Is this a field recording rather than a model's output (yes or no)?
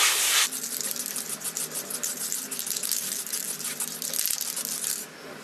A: no